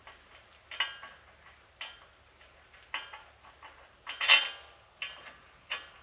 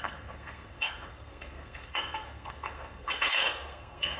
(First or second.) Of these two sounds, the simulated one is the second